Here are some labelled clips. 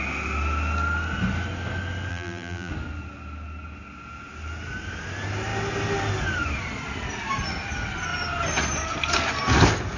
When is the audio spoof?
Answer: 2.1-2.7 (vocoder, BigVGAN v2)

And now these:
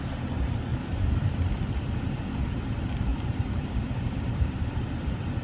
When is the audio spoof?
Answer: 0.7-1.3 (vocoder, BigVGAN v2); 3.1-4.8

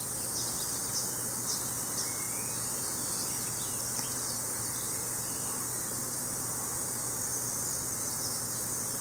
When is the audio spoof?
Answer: none

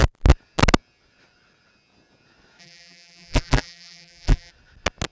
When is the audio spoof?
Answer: 2.6-4.5 (vocoder, BigVGAN v2)